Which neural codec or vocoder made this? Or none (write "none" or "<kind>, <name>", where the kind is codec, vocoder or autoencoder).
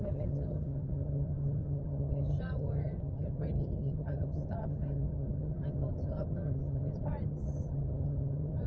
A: vocoder, HiFi-GAN